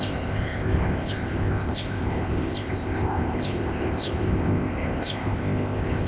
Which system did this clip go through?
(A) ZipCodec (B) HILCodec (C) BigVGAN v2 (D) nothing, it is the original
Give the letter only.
A